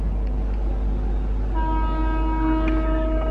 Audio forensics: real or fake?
real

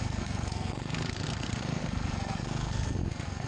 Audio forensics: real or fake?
fake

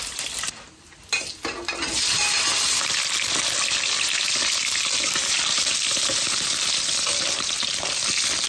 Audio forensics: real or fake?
real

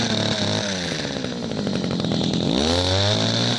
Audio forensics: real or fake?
real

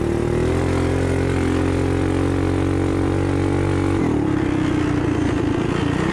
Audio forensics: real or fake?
real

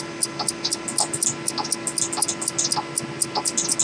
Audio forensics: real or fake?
real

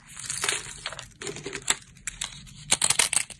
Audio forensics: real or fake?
real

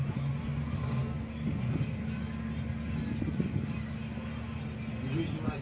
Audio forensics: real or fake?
real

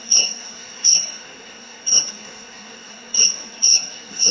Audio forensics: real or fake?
fake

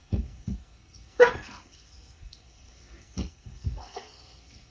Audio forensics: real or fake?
fake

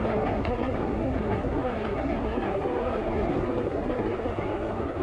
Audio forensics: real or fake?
fake